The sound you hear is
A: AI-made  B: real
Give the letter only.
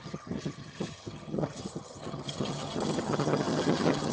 A